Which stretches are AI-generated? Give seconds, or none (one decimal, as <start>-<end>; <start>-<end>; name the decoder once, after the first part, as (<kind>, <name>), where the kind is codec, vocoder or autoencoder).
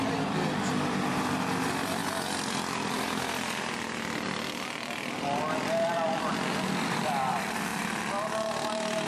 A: none